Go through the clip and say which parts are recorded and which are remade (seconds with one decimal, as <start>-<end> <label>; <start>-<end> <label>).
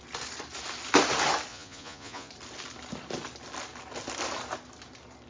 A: 0.0-1.5 recorded; 1.5-2.3 remade; 2.3-5.3 recorded